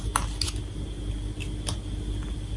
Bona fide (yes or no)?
yes